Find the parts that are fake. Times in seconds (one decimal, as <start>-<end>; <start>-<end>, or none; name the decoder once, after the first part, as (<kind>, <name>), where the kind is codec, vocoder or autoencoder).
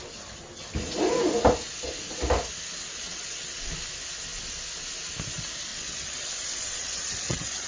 2.8-3.7 (vocoder, WaveNeXt); 5.7-7.7